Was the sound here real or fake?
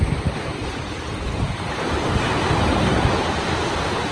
fake